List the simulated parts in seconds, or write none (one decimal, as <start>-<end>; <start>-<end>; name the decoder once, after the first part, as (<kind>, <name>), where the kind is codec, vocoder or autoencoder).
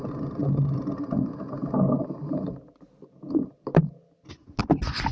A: none